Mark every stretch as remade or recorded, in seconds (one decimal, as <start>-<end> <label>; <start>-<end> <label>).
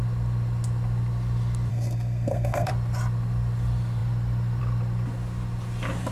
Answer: 0.0-1.7 recorded; 1.7-2.7 remade; 2.7-6.1 recorded